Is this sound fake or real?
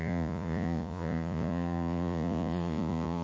fake